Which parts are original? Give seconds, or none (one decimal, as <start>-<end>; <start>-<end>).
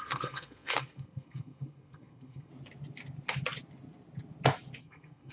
2.5-4.8